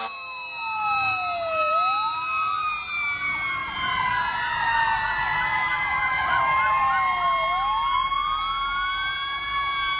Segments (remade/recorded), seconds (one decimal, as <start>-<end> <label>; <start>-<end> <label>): 0.0-3.6 recorded; 3.6-4.1 remade; 4.1-5.3 recorded; 5.3-6.4 remade; 6.4-10.0 recorded